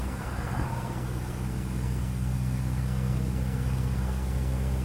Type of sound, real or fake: fake